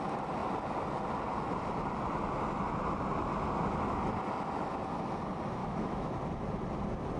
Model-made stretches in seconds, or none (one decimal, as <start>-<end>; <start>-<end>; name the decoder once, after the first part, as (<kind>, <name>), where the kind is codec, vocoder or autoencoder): 5.6-6.1 (autoencoder, DAC-VAE)